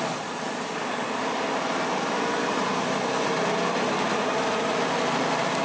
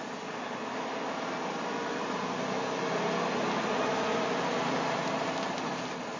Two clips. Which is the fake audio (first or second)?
first